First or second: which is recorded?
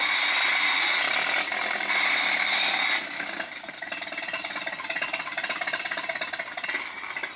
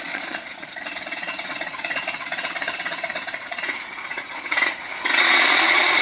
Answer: first